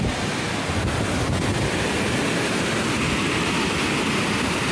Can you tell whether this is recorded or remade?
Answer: recorded